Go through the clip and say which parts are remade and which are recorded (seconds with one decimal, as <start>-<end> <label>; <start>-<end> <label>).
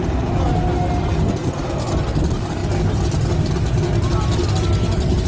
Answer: 0.0-5.3 recorded